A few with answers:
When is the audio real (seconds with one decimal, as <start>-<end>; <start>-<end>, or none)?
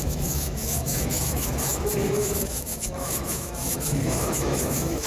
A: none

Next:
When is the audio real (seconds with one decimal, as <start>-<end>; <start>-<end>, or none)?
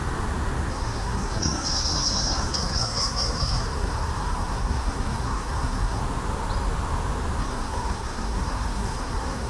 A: 0.0-0.7; 6.0-7.4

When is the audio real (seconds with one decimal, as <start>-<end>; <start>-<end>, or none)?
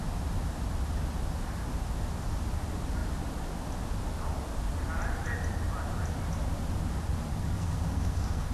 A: 0.0-7.3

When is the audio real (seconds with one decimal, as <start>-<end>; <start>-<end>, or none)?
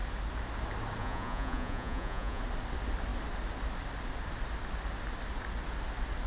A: 0.0-1.0; 2.4-6.3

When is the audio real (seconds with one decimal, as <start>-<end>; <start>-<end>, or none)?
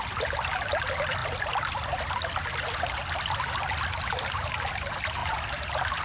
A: 0.0-6.0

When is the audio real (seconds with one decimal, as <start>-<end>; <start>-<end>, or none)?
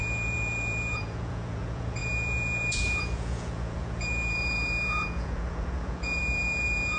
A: none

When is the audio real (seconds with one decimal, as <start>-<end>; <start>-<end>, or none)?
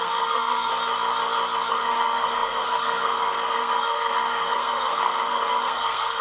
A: 0.7-1.7